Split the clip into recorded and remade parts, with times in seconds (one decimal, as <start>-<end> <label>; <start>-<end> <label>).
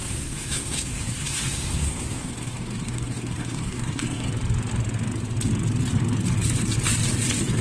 0.0-4.3 remade; 4.3-7.6 recorded